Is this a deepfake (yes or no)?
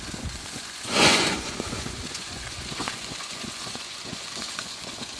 yes